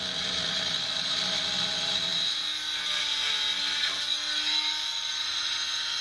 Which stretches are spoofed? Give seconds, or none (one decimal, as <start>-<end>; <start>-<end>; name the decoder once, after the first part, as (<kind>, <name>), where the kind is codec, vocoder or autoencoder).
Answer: none